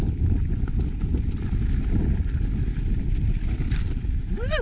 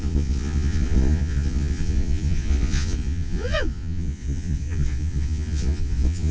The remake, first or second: second